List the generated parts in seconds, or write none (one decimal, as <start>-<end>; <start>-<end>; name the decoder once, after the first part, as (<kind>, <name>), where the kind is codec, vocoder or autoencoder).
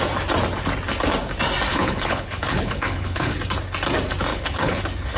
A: 1.7-3.3 (codec, HILCodec); 4.3-4.8